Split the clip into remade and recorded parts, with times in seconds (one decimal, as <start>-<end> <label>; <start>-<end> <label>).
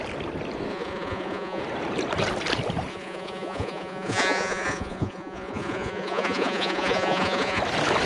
0.0-0.7 recorded; 0.7-1.6 remade; 1.6-2.9 recorded; 2.9-7.6 remade; 7.6-8.1 recorded